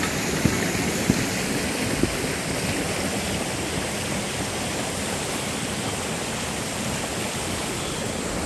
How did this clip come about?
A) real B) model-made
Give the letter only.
A